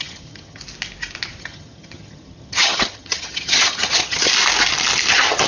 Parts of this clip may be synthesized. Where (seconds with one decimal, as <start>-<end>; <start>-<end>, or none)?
0.0-0.6; 1.4-4.3; 5.1-5.5

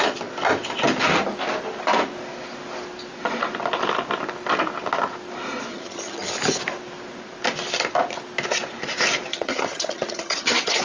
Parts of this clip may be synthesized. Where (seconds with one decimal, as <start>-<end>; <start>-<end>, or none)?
5.7-6.3; 9.3-10.8

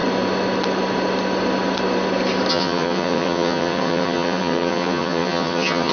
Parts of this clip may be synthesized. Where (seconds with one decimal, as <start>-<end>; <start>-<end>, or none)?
2.5-5.9

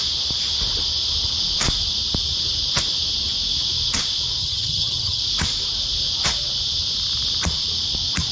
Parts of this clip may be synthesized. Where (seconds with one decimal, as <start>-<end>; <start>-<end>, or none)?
4.4-5.2

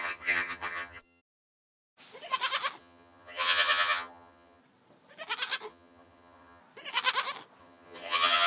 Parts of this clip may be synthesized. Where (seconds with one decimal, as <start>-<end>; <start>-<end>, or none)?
0.0-1.2; 2.8-4.6; 5.7-6.6; 7.6-8.5

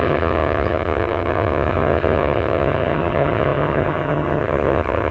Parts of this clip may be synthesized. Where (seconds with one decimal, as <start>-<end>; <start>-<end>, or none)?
0.0-5.1

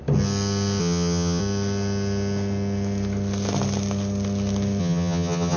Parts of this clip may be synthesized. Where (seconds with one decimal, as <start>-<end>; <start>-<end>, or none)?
0.8-1.4; 4.8-5.6